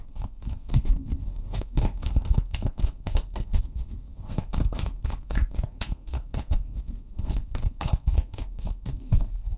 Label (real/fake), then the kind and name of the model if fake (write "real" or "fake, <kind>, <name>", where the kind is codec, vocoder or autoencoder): fake, codec, SNAC